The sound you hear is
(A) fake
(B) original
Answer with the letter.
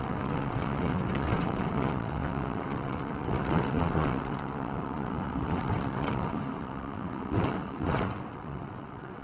A